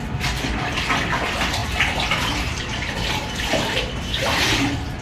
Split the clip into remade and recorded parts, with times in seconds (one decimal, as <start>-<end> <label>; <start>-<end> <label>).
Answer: 0.0-5.0 recorded